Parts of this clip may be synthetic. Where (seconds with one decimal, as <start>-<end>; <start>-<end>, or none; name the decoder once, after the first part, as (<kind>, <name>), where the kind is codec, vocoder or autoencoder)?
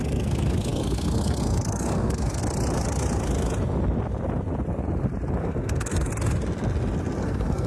0.0-2.4 (codec, SNAC); 5.4-6.1; 7.2-7.7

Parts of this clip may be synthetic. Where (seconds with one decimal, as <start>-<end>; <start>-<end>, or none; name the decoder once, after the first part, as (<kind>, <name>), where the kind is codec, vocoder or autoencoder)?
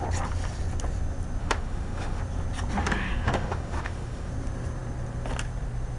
1.4-2.2 (autoencoder, DAC-VAE); 2.8-4.3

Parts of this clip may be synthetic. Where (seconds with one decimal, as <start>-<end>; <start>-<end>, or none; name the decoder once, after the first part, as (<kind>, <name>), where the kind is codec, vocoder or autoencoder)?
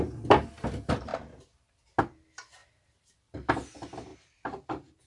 4.1-5.1 (vocoder, BigVGAN v2)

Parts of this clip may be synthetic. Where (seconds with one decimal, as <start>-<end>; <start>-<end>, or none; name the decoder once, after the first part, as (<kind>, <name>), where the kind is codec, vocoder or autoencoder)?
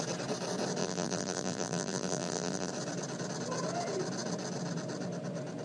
0.8-2.7 (vocoder, BigVGAN v2)